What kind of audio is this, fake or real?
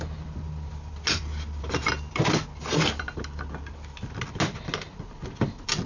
real